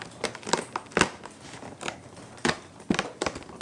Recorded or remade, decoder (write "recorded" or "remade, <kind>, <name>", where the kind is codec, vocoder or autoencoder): recorded